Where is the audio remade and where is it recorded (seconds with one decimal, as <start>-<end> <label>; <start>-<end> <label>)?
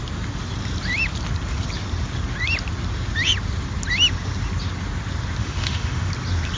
0.0-5.4 recorded; 5.4-6.1 remade; 6.1-6.6 recorded